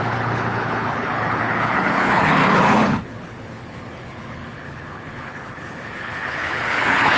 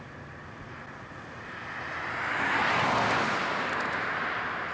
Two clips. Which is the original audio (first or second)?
second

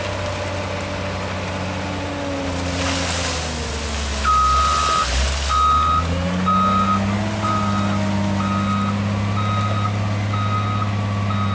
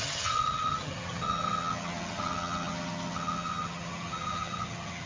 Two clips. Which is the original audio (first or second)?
first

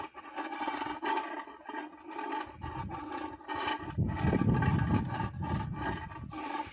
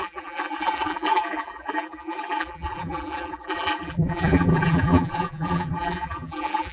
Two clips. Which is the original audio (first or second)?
first